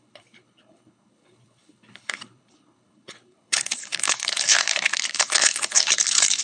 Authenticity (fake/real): fake